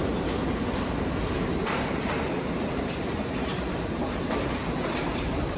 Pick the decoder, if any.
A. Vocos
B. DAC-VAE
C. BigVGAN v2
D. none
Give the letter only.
C